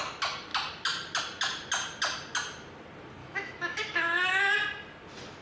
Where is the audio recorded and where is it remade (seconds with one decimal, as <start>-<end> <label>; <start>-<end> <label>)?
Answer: 0.0-3.2 recorded; 3.2-4.3 remade; 4.3-5.4 recorded